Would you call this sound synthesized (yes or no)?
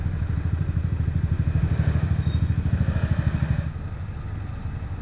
no